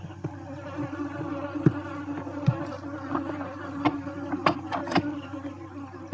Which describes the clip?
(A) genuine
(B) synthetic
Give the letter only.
A